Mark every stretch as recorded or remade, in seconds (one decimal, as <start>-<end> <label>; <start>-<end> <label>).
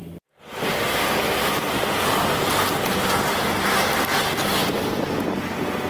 0.0-5.9 recorded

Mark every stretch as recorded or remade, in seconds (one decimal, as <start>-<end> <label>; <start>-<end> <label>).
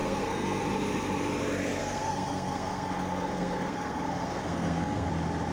0.0-0.6 remade; 0.6-1.8 recorded; 1.8-5.1 remade; 5.1-5.5 recorded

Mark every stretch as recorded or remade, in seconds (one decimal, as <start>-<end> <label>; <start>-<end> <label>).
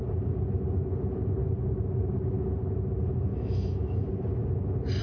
0.0-3.3 recorded; 3.3-4.1 remade; 4.1-5.0 recorded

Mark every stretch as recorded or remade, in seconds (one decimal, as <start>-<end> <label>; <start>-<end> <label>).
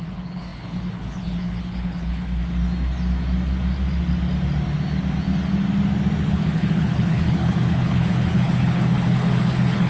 0.0-2.4 remade; 2.4-6.3 recorded; 6.3-9.9 remade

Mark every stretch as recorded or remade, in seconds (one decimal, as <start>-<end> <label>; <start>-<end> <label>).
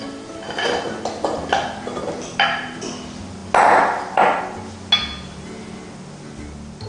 0.0-6.9 recorded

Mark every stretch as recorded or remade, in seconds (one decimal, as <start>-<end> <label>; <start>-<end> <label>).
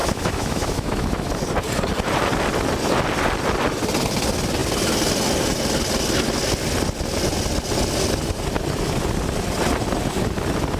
0.0-1.3 remade; 1.3-10.8 recorded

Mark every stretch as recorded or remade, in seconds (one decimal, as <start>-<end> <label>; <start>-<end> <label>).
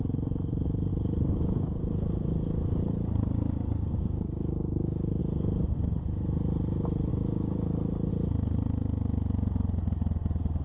0.0-0.9 recorded; 0.9-5.2 remade; 5.2-7.1 recorded; 7.1-8.1 remade; 8.1-10.6 recorded